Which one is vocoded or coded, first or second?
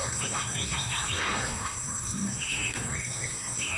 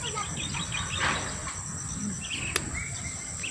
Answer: first